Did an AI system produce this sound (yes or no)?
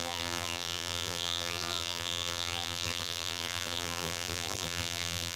yes